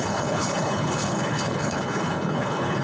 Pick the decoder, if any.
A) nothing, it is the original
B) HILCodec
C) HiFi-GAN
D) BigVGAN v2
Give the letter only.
B